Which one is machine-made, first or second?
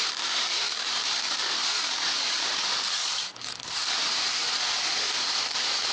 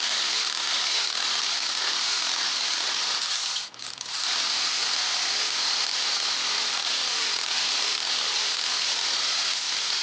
first